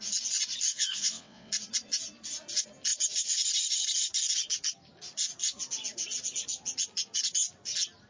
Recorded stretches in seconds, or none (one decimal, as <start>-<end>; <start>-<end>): 0.0-0.7; 1.5-8.1